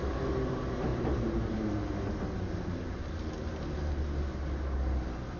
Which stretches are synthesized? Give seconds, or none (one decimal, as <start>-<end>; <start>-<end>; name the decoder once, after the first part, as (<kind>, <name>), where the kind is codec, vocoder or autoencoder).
0.9-1.7 (vocoder, BigVGAN v2)